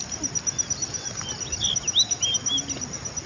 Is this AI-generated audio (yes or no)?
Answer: no